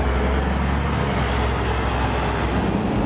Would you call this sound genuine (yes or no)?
yes